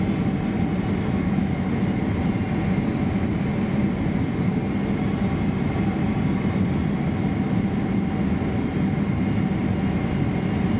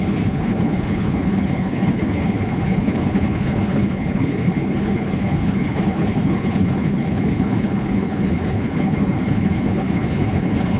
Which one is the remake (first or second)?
second